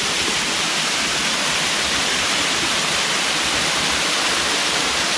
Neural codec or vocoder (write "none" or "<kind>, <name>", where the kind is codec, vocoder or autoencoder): vocoder, BigVGAN v2